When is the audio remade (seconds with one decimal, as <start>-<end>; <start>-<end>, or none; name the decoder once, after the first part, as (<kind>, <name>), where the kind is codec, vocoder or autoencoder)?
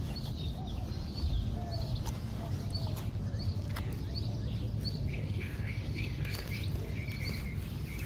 5.1-6.5 (autoencoder, DAC-VAE)